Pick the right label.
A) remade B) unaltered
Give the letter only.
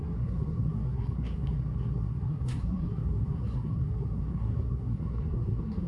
A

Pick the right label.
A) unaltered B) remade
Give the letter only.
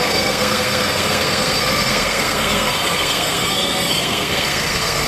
B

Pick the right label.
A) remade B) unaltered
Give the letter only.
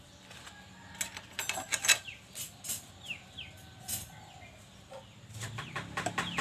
B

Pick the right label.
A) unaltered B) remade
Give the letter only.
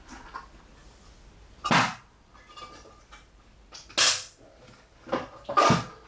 A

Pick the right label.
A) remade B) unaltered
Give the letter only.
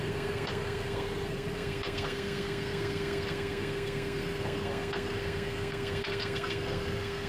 A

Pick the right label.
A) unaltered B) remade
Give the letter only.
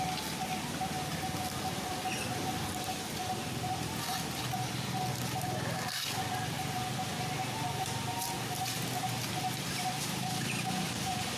A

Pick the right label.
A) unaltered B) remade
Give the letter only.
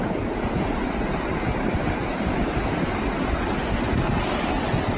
A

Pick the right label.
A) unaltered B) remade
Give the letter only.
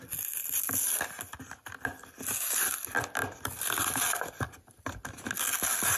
A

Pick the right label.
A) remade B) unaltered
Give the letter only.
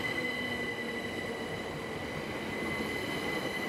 B